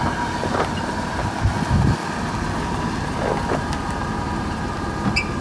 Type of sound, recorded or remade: recorded